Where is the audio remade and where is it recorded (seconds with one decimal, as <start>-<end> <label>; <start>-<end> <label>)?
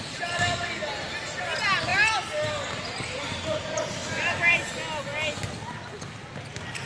0.0-6.9 recorded